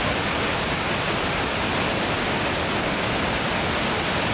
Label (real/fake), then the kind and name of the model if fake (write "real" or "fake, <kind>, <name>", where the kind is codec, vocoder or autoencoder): real